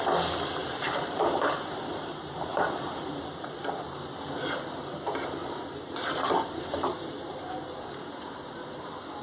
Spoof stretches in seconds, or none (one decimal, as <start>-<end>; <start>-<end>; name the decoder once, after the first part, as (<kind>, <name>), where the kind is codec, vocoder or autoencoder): 0.6-3.6 (vocoder, BigVGAN v2); 5.4-8.7